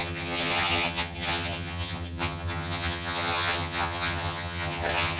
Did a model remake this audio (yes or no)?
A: yes